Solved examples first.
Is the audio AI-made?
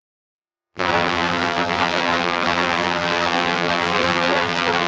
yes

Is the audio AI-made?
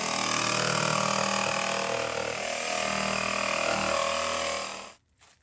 no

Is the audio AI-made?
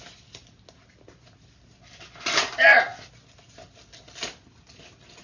no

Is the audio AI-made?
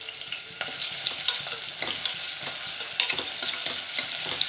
no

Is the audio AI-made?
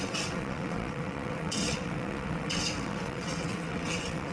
yes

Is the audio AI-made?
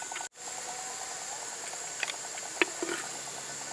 no